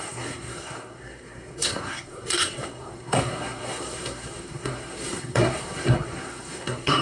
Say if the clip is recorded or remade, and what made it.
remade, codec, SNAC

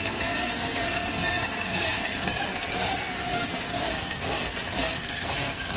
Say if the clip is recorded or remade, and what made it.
remade, codec, SNAC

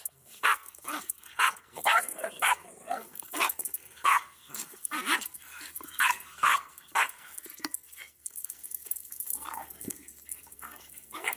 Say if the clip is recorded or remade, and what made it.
remade, codec, SNAC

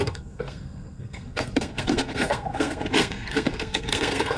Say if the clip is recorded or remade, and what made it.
remade, codec, SNAC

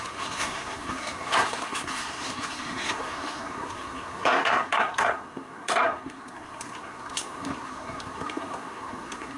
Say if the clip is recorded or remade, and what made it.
remade, codec, SNAC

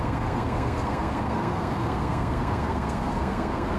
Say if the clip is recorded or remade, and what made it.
remade, codec, SNAC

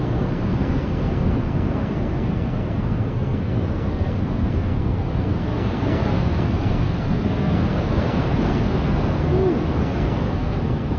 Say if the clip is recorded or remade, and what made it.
remade, codec, SNAC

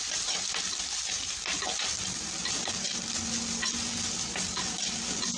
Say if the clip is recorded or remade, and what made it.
recorded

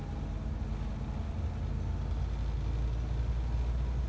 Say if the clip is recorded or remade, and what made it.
recorded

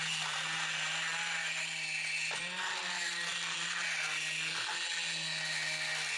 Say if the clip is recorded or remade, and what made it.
recorded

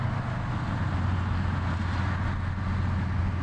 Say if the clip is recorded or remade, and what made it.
recorded